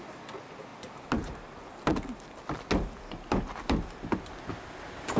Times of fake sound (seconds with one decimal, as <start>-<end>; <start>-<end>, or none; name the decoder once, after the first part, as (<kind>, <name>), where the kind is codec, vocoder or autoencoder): none